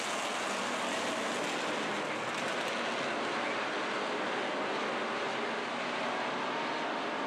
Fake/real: real